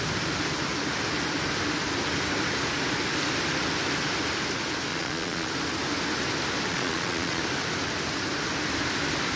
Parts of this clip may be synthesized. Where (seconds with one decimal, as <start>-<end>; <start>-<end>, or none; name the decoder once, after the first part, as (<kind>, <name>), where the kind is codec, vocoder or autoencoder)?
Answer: 4.9-5.5 (vocoder, Vocos); 6.7-7.4